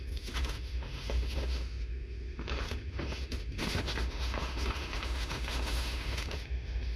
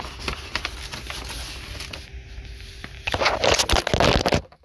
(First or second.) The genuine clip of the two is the second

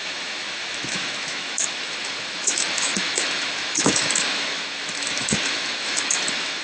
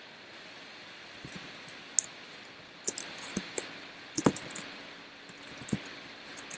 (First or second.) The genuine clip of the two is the second